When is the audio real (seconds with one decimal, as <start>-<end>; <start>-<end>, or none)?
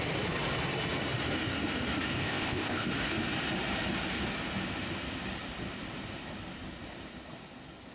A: 0.0-2.2; 2.9-7.9